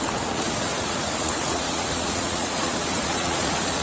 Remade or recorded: remade